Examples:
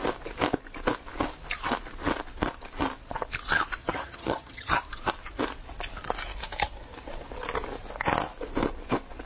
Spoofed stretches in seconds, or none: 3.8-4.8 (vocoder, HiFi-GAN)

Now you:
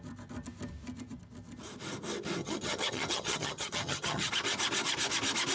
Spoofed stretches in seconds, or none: 2.4-4.3 (vocoder, HiFi-GAN)

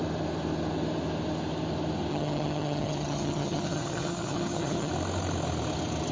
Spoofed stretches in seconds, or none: 2.1-4.9 (vocoder, HiFi-GAN)

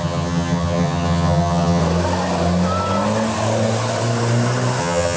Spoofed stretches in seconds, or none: 0.0-1.8 (vocoder, HiFi-GAN); 4.8-5.2